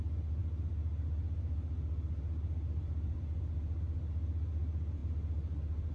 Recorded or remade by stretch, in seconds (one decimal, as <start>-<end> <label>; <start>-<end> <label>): 0.0-5.9 recorded